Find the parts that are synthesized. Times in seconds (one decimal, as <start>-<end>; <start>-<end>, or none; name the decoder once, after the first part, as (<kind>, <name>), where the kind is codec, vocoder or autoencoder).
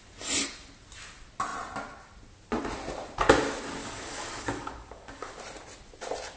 3.8-5.4 (codec, DAC)